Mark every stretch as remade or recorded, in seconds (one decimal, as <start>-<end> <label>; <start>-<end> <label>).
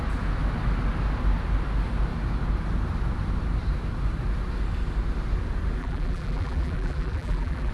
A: 0.0-5.8 recorded; 5.8-7.7 remade